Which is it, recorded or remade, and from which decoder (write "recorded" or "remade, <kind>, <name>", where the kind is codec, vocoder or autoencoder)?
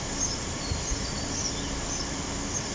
recorded